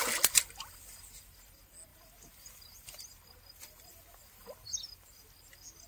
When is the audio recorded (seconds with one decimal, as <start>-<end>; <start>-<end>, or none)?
0.0-5.9

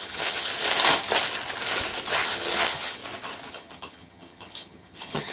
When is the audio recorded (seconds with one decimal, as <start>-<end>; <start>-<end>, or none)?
0.5-2.1; 3.0-3.5